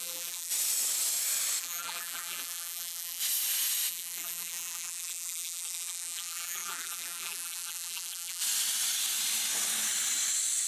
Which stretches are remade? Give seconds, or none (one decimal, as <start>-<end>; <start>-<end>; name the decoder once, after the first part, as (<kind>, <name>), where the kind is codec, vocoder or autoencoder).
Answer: 0.0-0.5 (vocoder, BigVGAN v2); 1.6-3.2; 3.9-8.4